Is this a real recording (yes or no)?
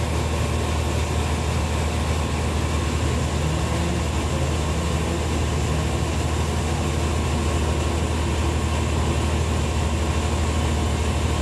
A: yes